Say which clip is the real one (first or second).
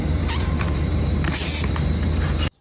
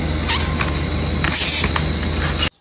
second